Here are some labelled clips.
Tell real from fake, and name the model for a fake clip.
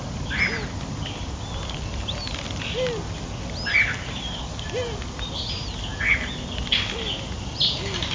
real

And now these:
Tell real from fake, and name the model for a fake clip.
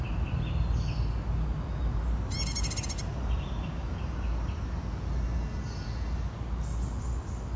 real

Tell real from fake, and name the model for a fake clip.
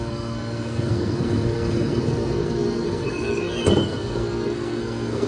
fake, codec, SNAC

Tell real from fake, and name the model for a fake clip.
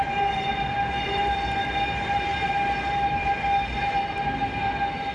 real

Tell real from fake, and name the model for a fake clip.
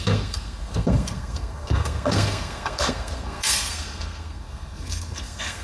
fake, codec, SNAC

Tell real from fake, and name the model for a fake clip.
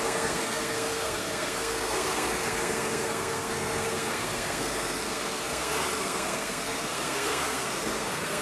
fake, codec, SNAC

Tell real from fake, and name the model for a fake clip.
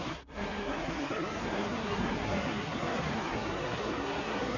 fake, codec, SNAC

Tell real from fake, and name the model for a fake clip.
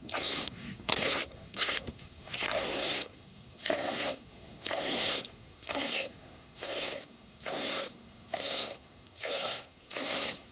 fake, codec, SNAC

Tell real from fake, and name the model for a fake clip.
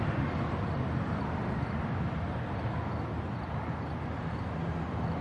real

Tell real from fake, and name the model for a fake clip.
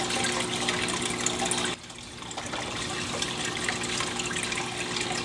real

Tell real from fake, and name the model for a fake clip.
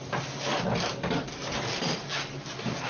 real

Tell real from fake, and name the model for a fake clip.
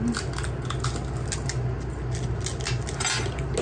real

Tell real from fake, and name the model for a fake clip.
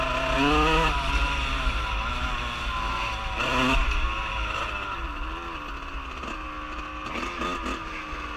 real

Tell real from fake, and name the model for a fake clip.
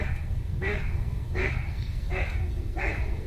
fake, codec, SNAC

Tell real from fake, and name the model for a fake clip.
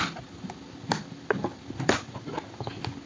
real